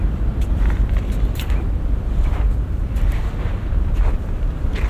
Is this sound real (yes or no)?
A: no